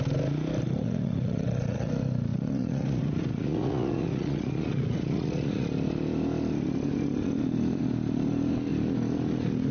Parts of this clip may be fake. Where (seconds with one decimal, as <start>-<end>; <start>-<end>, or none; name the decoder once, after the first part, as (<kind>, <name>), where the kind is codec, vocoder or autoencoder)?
0.8-1.9 (vocoder, Vocos); 2.3-5.7